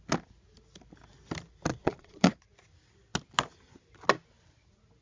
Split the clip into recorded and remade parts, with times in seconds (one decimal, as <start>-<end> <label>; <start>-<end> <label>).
0.0-1.7 recorded; 1.7-2.4 remade; 2.4-5.0 recorded